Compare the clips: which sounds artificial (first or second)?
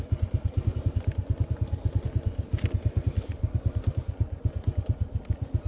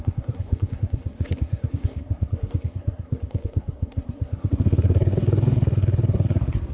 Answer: second